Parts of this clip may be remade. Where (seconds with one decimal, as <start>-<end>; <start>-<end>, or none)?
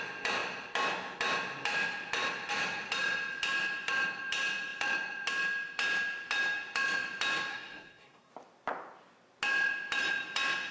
7.5-8.3